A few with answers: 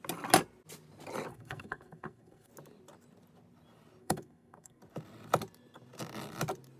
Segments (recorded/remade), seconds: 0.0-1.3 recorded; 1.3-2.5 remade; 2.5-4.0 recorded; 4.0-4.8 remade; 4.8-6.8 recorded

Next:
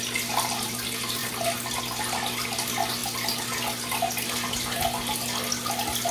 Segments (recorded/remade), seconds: 0.0-6.1 recorded

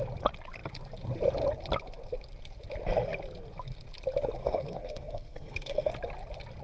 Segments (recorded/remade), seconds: 0.0-4.4 recorded; 4.4-5.9 remade; 5.9-6.6 recorded

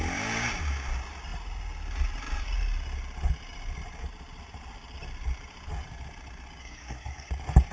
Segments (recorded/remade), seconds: 0.0-6.6 recorded; 6.6-7.3 remade; 7.3-7.7 recorded

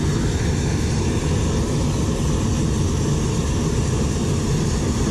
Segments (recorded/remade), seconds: 0.0-5.1 recorded